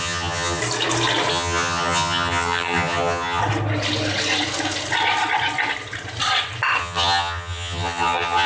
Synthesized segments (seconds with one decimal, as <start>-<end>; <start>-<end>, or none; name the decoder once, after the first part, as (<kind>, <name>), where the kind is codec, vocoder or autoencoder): 0.0-0.6 (vocoder, HiFi-GAN); 1.3-3.4; 6.8-8.5